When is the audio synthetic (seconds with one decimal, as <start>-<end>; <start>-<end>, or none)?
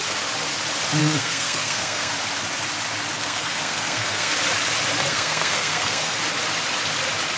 1.0-2.1; 3.2-4.3; 5.1-6.2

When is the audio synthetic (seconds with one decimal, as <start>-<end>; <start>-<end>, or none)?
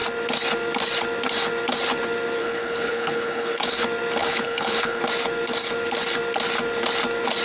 2.4-3.8; 4.2-5.0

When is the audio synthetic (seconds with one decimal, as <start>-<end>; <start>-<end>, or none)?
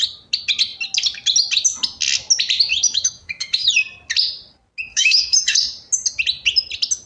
2.7-3.7; 4.9-5.6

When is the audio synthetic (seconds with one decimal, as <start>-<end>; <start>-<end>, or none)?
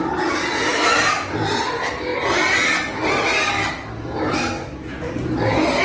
0.6-1.1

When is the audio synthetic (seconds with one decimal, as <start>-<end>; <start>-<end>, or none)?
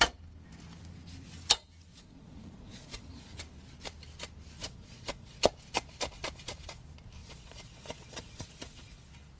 1.9-3.4; 4.6-5.5; 7.2-9.0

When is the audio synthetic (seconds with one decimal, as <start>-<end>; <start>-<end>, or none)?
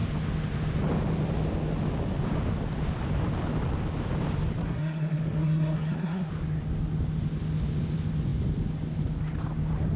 4.6-6.3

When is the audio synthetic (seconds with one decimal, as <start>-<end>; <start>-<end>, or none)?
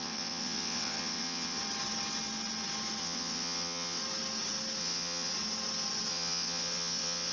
0.0-1.6; 3.0-4.0; 4.8-5.3; 6.1-7.3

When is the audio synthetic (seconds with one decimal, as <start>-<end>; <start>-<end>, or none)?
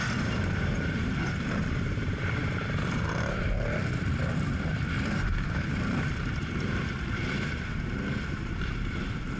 0.0-9.4